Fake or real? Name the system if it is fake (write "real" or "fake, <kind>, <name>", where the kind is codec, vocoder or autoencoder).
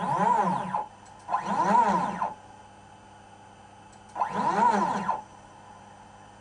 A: real